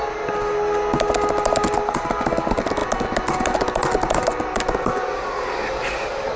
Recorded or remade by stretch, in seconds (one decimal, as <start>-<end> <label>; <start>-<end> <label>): 0.0-6.4 recorded